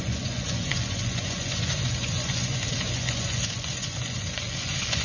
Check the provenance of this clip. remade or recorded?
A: remade